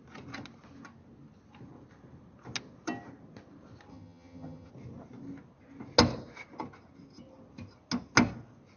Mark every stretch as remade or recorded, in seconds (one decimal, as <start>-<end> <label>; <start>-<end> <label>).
0.0-3.9 recorded; 3.9-4.7 remade; 4.7-8.8 recorded